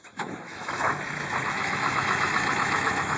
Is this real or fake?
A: fake